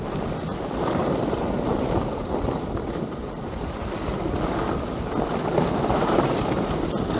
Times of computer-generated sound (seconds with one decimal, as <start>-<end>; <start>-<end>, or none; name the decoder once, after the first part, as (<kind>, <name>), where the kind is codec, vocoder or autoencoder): none